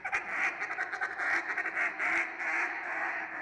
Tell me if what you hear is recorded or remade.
recorded